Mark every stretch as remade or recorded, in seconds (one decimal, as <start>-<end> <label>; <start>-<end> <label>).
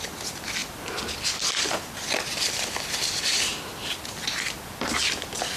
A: 0.0-5.6 recorded